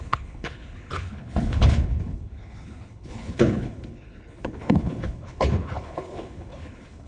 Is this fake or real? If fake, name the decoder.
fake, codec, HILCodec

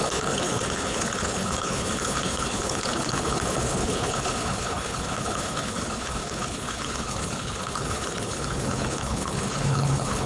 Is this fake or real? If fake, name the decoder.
fake, codec, HILCodec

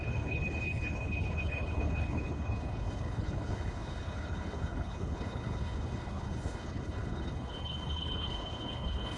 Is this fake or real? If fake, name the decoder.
fake, codec, HILCodec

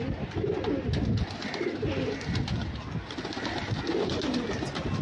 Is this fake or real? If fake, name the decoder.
real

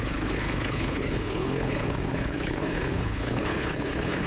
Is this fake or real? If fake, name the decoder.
fake, codec, HILCodec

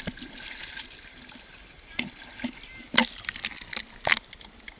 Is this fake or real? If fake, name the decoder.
real